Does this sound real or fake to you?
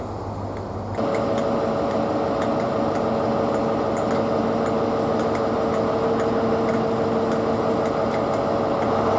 real